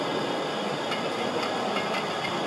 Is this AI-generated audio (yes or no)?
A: no